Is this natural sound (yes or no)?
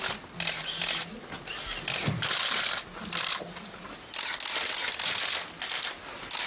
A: yes